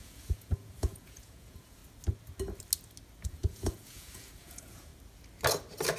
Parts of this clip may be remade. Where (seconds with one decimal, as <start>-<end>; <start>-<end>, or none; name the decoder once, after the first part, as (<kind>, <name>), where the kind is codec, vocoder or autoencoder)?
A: 0.0-1.8 (vocoder, Vocos); 3.3-4.9